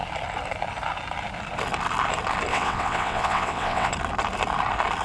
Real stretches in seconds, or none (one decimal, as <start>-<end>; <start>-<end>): 0.0-2.5; 3.9-5.0